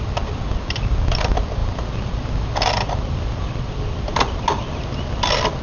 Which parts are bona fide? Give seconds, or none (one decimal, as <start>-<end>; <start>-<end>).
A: 0.0-1.6; 2.7-5.6